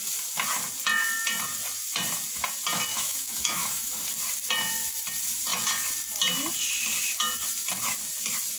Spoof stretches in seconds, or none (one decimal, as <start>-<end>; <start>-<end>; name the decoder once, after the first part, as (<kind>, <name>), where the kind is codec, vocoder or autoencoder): 2.9-3.9 (autoencoder, DAC-VAE)